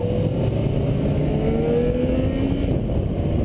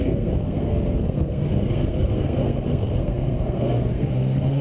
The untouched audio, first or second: first